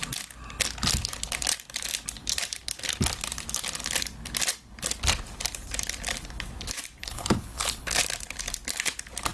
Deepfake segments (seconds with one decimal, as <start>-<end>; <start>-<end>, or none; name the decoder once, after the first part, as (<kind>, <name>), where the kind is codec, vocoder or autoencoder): 7.0-8.0 (codec, HILCodec)